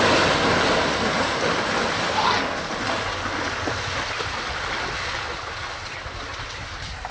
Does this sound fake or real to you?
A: real